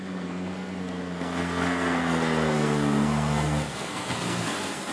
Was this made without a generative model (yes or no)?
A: no